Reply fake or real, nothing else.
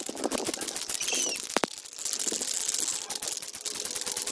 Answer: real